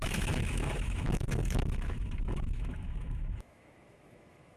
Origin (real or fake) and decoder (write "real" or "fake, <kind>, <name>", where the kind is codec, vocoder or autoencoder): fake, autoencoder, DAC-VAE